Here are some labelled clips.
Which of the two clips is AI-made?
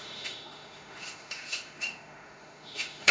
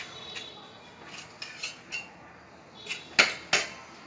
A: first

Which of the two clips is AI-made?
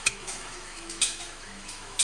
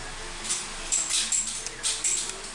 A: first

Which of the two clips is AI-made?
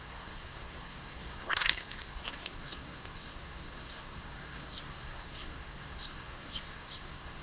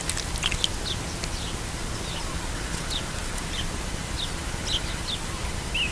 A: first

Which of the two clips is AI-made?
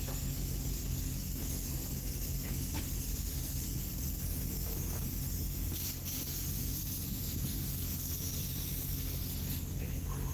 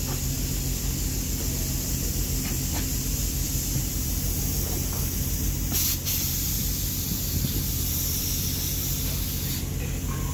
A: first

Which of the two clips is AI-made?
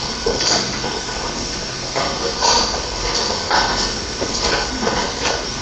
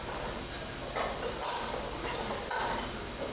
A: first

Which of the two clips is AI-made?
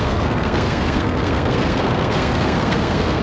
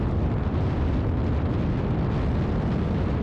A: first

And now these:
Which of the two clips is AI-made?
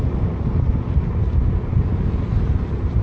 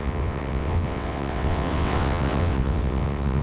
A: second